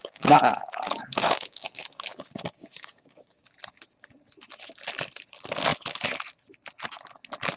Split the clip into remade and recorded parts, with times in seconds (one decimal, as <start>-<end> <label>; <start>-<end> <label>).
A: 0.0-3.4 remade; 3.4-7.6 recorded